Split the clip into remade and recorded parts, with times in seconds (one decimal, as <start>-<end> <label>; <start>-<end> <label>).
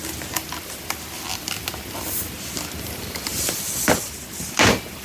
0.0-5.0 recorded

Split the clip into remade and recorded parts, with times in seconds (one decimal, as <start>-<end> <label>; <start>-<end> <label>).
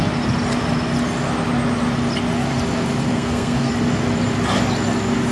0.0-3.1 recorded; 3.1-3.7 remade; 3.7-5.3 recorded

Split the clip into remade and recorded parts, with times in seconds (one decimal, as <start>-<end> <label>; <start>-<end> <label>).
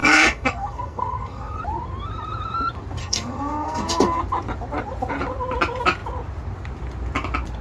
0.0-1.6 remade; 1.6-3.0 recorded; 3.0-4.2 remade; 4.2-7.6 recorded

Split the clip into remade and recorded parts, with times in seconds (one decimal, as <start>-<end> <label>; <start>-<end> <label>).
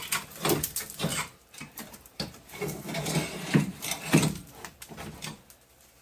0.0-1.1 recorded; 1.1-4.5 remade; 4.5-6.0 recorded